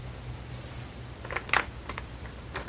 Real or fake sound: real